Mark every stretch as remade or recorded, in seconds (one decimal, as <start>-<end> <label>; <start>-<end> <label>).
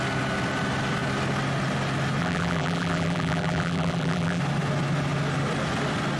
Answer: 0.0-2.2 recorded; 2.2-4.4 remade; 4.4-6.2 recorded